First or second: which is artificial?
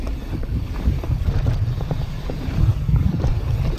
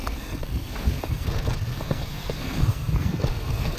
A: second